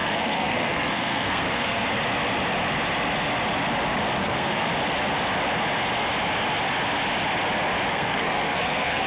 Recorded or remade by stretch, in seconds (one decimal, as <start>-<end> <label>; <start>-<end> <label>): 0.0-1.9 remade; 1.9-4.2 recorded; 4.2-4.7 remade; 4.7-7.9 recorded; 7.9-9.1 remade